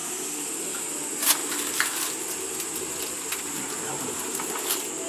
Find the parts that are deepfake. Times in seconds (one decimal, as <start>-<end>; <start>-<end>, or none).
0.0-0.5

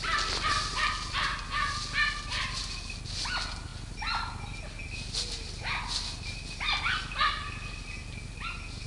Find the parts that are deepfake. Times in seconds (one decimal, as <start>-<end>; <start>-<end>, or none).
none

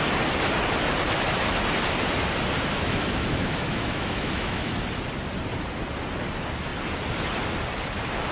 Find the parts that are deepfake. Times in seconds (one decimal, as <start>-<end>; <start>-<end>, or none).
2.7-4.7

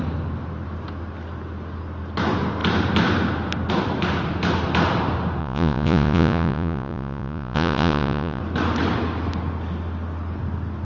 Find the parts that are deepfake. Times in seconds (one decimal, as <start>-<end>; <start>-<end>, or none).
5.4-8.4

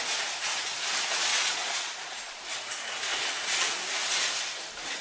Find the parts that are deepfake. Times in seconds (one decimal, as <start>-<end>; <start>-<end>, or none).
1.3-2.4; 3.1-3.7

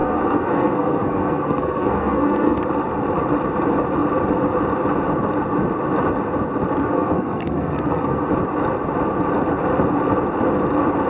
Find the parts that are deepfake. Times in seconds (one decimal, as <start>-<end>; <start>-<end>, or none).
0.0-2.6; 6.8-8.3

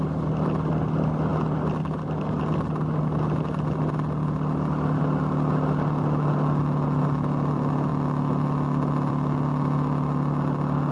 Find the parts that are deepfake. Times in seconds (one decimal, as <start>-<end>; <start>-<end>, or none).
none

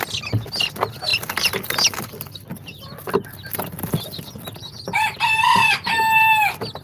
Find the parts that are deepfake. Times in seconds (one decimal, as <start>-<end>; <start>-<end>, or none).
none